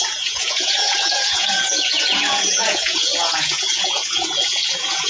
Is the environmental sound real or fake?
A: fake